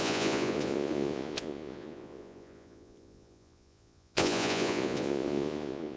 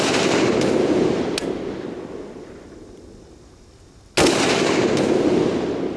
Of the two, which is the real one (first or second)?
second